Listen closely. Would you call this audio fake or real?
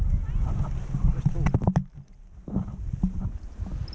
real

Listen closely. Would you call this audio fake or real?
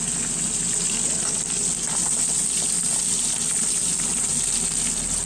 real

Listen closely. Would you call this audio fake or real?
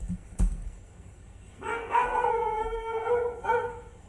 fake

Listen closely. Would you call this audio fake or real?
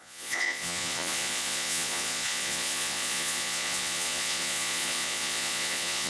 fake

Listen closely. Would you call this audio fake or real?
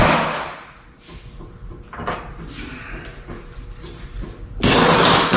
real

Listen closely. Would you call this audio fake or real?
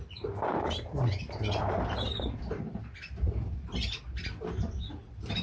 fake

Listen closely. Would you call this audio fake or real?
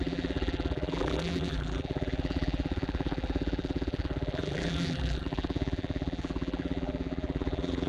fake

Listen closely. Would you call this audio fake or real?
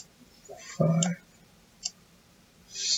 fake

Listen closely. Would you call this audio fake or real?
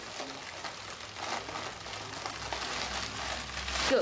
real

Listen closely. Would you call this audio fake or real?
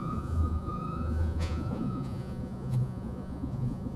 fake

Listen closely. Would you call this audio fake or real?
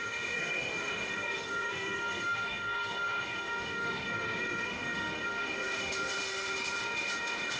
fake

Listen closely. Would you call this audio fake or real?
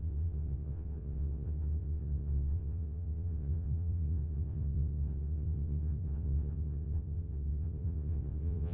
fake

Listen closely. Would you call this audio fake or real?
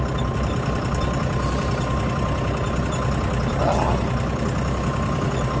real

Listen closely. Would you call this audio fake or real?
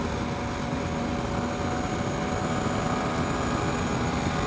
real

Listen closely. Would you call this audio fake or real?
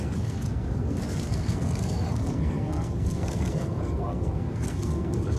fake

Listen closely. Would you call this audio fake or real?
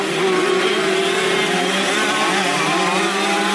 real